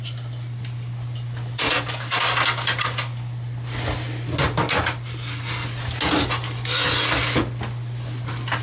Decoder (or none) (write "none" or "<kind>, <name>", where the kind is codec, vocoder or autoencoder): none